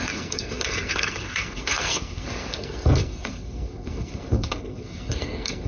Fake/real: fake